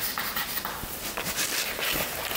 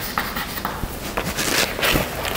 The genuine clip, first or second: second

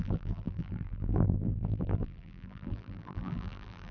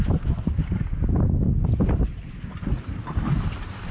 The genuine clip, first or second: second